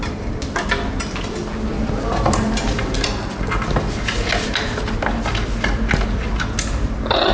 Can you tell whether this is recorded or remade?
recorded